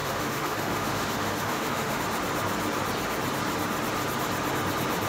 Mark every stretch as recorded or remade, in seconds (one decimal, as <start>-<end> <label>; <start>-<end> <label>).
0.0-2.0 remade; 2.0-5.1 recorded